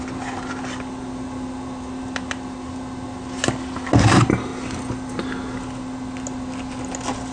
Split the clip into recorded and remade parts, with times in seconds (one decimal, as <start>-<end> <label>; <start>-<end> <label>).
0.0-7.3 recorded